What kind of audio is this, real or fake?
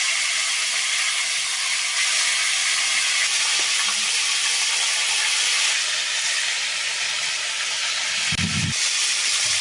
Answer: real